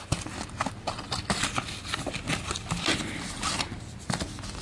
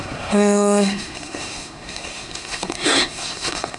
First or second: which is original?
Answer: first